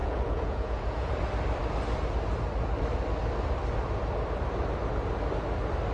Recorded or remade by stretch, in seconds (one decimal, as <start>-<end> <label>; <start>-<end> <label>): 0.0-1.1 remade; 1.1-5.9 recorded